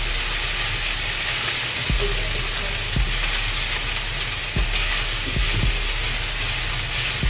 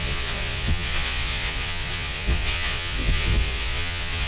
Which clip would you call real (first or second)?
first